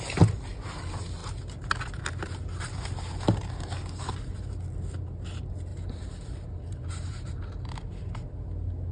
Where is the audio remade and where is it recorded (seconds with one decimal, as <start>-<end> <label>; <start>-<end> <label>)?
0.0-5.7 recorded; 5.7-7.7 remade; 7.7-8.9 recorded